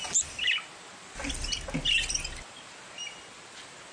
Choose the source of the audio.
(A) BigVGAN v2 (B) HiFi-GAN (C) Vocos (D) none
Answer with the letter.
D